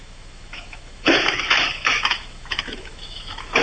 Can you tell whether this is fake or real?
fake